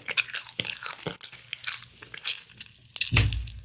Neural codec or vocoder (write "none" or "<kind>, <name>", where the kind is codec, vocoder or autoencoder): none